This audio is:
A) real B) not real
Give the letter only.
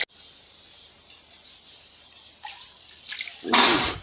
A